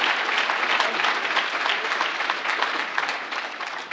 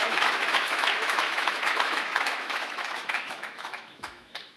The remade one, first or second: second